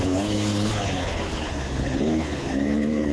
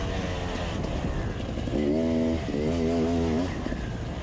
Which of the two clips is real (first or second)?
second